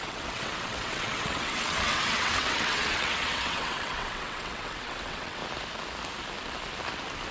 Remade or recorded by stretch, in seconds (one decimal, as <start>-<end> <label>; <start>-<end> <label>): 0.0-5.4 remade; 5.4-7.3 recorded